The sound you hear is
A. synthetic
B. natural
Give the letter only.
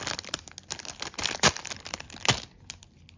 B